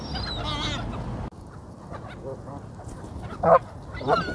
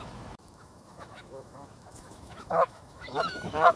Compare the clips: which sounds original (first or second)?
first